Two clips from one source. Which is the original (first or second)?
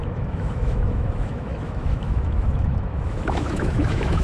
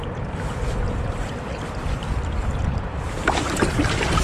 second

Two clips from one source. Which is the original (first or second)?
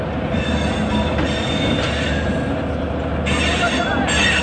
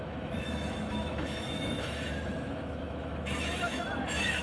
first